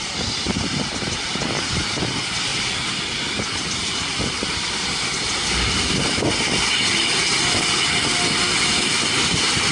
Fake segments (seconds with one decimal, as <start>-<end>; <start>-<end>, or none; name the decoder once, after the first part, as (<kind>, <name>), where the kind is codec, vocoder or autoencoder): none